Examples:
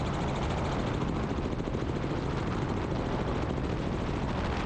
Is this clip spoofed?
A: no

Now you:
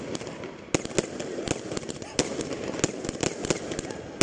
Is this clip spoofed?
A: no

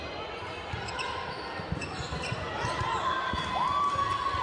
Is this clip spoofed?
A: no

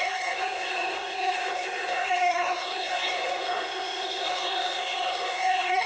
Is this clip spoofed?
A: yes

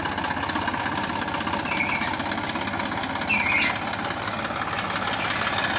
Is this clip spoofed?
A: no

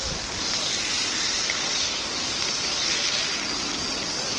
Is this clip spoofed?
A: no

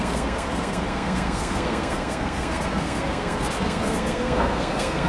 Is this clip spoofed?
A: yes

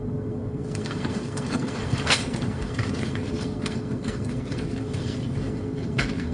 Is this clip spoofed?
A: yes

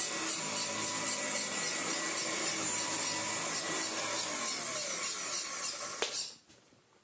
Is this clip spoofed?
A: no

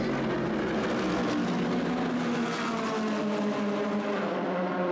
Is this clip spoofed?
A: no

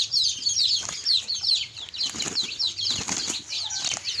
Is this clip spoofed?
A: no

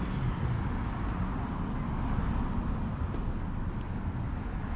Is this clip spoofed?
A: no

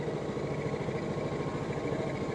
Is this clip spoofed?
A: no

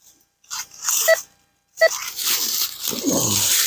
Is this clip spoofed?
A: no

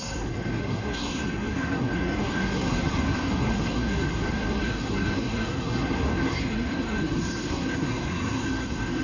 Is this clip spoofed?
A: yes